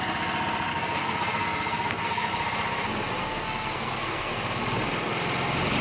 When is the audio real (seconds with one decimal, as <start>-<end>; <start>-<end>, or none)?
0.0-0.7; 2.3-3.2; 4.4-5.8